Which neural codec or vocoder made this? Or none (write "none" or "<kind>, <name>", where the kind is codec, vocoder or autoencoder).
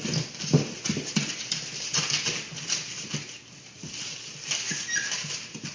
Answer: none